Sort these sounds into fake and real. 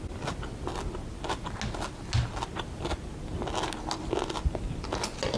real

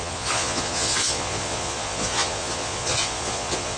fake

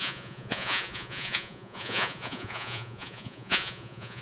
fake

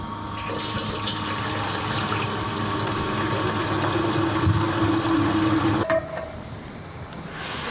real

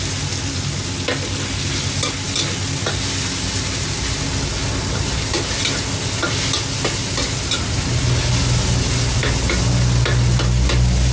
real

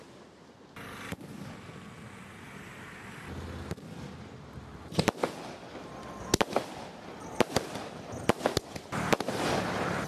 real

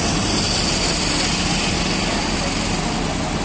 real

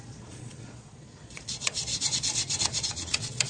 fake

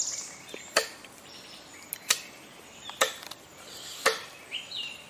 real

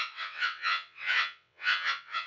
fake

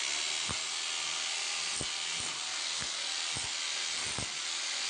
real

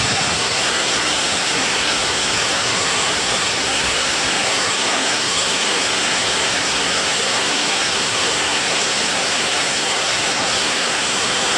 fake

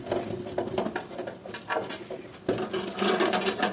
real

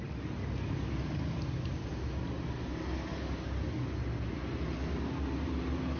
real